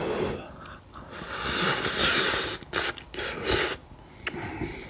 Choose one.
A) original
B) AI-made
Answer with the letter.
A